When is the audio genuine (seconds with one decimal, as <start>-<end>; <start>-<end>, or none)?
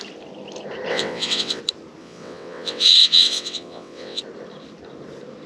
0.0-0.9; 1.6-2.0; 4.2-5.5